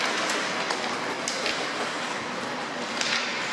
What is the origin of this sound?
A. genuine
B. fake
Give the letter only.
A